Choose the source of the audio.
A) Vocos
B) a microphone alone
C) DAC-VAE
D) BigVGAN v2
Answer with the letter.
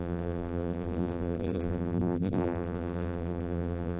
D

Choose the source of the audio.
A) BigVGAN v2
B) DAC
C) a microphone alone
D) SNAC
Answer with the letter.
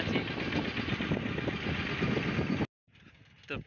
C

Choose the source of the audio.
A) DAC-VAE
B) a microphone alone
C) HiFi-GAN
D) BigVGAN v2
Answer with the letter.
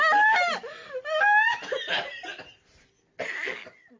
B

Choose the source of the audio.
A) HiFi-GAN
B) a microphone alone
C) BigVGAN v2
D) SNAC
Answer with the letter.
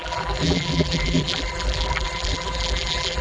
C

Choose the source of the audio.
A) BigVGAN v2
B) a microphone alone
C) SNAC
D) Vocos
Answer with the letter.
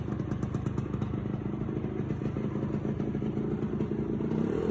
B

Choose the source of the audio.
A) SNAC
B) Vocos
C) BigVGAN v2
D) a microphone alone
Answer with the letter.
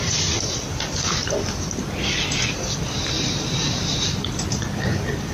C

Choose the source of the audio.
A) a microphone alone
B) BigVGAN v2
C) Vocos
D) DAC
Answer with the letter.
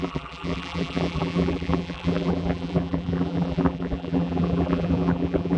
B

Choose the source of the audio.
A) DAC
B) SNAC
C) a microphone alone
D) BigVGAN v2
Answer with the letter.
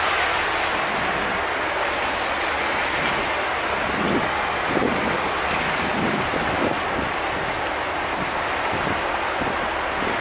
C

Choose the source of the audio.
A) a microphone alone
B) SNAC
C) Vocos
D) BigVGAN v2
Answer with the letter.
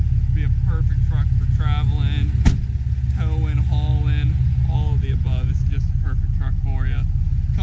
A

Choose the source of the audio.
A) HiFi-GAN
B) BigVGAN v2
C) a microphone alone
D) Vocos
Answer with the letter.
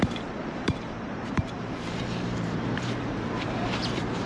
B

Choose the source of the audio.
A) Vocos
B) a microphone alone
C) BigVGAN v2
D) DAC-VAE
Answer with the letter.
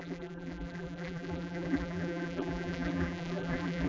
C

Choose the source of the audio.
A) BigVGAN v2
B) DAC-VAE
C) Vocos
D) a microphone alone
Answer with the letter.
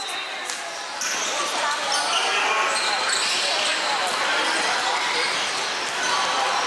D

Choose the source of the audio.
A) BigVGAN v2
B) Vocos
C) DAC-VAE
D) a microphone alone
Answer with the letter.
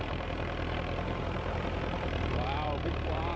A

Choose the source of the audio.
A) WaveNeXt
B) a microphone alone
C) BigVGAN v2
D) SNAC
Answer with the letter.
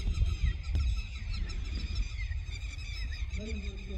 C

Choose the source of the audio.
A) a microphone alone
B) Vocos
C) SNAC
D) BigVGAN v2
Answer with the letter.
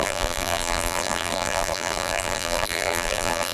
D